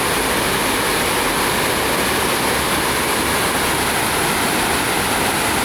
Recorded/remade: recorded